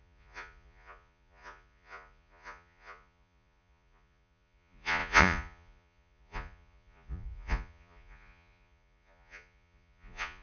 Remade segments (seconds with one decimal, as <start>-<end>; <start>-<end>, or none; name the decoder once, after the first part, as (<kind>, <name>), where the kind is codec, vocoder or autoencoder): 0.0-10.4 (vocoder, Vocos)